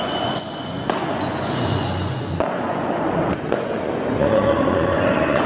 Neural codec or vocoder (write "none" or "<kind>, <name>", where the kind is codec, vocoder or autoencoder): vocoder, Vocos